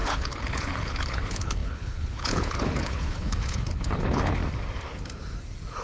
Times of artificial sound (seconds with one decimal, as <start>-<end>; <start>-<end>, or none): 0.0-4.4